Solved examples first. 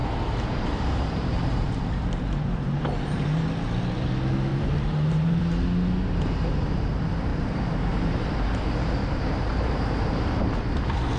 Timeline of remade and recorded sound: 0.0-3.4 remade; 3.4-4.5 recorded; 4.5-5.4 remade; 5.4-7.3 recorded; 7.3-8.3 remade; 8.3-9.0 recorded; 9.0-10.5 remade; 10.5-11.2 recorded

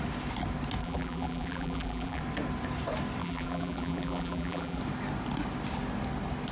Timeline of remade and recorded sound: 0.0-0.8 recorded; 0.8-2.2 remade; 2.2-3.2 recorded; 3.2-4.8 remade; 4.8-6.5 recorded

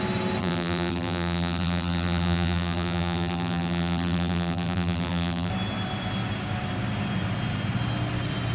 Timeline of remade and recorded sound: 0.0-0.4 recorded; 0.4-5.5 remade; 5.5-8.5 recorded

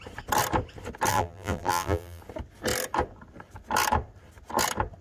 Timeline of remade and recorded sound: 0.0-1.1 recorded; 1.1-2.2 remade; 2.2-5.0 recorded

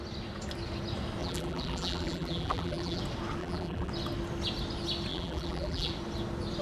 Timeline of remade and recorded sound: 0.0-1.2 recorded; 1.2-3.0 remade; 3.0-3.4 recorded; 3.4-3.9 remade; 3.9-5.1 recorded; 5.1-5.9 remade; 5.9-6.6 recorded

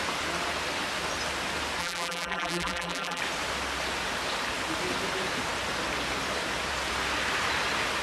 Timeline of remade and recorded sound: 0.0-1.8 recorded; 1.8-3.2 remade; 3.2-8.0 recorded

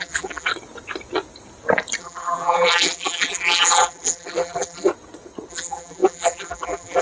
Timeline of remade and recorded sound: 0.0-0.5 remade; 0.5-2.0 recorded; 2.0-4.9 remade; 4.9-5.5 recorded; 5.5-7.0 remade

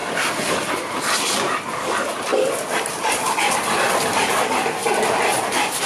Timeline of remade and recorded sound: 0.0-2.3 remade; 2.3-3.1 recorded; 3.1-4.8 remade; 4.8-5.5 recorded; 5.5-5.9 remade